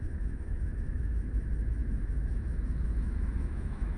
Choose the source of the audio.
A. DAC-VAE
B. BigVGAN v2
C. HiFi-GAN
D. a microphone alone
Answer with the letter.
A